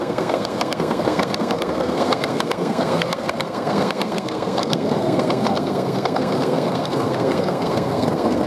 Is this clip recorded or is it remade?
remade